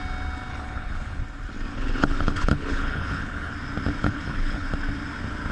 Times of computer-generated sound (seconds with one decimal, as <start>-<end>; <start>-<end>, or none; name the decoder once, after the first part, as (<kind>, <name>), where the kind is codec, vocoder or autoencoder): 0.5-1.2 (codec, HILCodec); 1.7-3.5; 4.0-4.7